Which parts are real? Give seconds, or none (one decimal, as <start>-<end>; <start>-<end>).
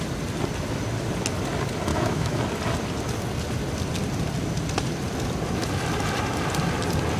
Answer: 0.0-1.9; 2.4-7.2